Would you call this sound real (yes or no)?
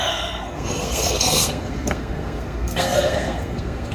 no